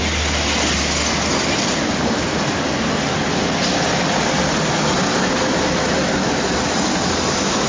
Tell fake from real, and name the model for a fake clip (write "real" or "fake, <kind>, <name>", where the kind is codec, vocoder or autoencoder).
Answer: real